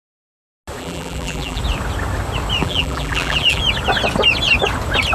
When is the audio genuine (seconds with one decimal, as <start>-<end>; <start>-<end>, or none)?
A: 0.0-0.8; 1.6-2.6; 3.6-5.1